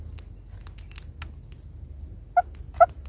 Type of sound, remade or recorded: recorded